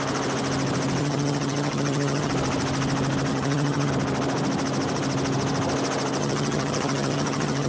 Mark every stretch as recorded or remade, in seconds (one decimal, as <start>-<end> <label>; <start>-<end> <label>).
0.0-1.0 recorded; 1.0-2.3 remade; 2.3-3.3 recorded; 3.3-3.9 remade; 3.9-6.2 recorded; 6.2-7.7 remade